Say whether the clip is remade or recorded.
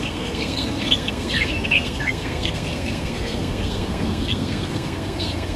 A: remade